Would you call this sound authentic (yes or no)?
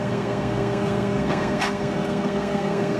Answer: no